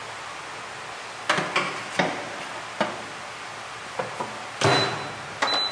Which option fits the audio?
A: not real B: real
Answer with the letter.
B